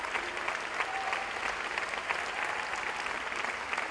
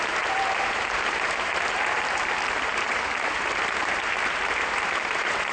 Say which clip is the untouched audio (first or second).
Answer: first